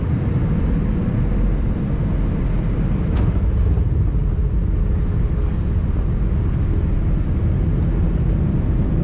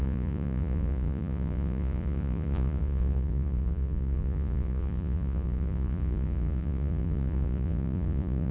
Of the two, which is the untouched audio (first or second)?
first